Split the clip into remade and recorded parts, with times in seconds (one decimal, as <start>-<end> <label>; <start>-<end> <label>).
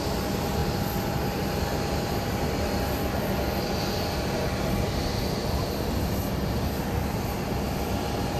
0.0-8.4 recorded